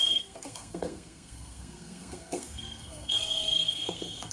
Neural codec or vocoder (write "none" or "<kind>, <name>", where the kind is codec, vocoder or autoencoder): codec, SNAC